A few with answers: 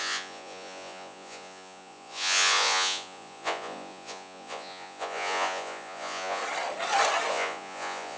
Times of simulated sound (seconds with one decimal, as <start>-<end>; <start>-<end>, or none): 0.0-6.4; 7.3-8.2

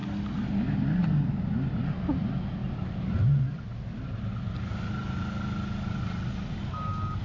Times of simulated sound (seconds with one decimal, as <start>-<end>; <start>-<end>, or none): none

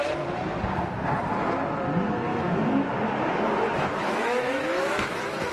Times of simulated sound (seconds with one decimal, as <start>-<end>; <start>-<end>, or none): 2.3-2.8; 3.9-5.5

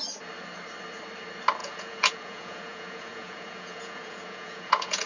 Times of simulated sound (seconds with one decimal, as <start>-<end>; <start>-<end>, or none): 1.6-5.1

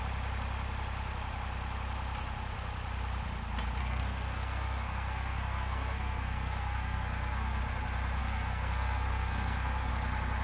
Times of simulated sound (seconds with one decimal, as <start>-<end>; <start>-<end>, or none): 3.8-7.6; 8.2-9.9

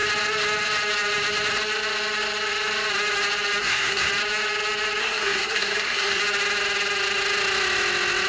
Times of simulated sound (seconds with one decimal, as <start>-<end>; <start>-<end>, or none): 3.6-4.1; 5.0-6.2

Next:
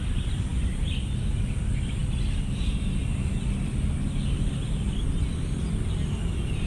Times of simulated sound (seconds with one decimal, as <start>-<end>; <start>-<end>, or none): none

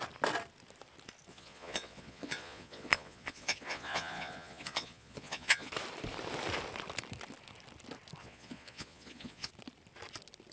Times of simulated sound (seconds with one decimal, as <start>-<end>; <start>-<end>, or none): 1.3-5.7; 8.2-9.5